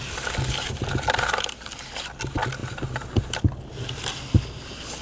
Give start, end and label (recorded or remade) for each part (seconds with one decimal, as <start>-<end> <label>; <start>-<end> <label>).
0.0-1.9 remade; 1.9-5.0 recorded